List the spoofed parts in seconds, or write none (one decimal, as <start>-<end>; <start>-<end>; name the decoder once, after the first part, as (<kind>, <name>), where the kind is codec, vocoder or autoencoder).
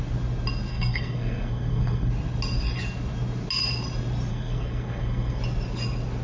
0.7-2.1 (codec, SNAC); 4.3-5.4